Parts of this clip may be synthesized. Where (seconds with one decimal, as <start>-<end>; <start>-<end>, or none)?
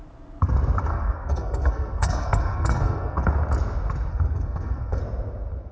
0.9-3.3; 4.1-5.0